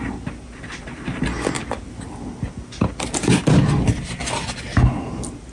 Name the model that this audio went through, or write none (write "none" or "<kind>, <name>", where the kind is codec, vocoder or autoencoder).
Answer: none